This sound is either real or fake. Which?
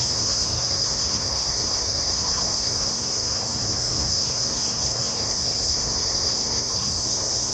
fake